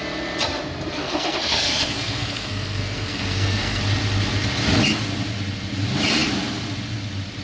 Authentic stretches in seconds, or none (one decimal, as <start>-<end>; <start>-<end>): 0.0-1.0; 3.8-7.4